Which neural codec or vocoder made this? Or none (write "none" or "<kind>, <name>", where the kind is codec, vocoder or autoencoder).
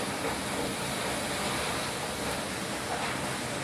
none